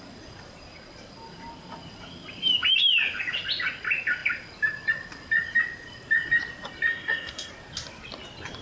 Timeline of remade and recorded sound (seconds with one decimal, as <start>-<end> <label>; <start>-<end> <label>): 0.0-6.9 recorded; 6.9-7.5 remade; 7.5-8.6 recorded